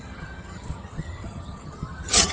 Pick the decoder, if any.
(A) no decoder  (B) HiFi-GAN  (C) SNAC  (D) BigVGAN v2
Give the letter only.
B